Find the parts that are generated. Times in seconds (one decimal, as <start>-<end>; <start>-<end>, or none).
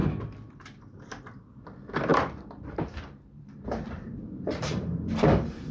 2.1-5.7